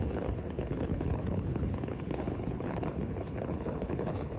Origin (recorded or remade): remade